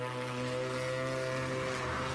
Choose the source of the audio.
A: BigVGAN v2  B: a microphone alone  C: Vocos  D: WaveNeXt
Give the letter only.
B